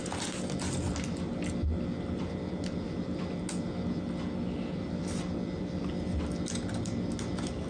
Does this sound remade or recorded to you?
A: recorded